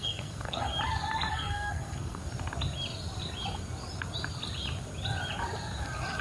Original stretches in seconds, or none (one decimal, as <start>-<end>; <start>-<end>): 0.7-1.3; 2.2-6.2